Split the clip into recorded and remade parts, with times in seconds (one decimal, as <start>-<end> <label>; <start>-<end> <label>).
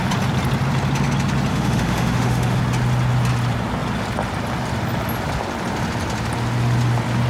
0.0-1.5 recorded; 1.5-2.6 remade; 2.6-7.3 recorded